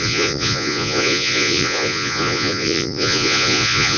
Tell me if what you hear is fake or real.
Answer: fake